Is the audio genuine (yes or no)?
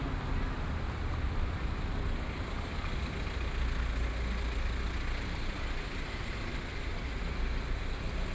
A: yes